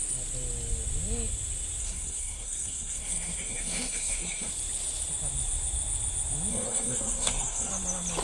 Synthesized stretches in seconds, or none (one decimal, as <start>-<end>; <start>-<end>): 1.8-4.5; 6.5-7.7